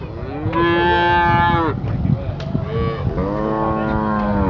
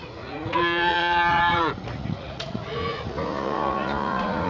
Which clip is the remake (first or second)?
second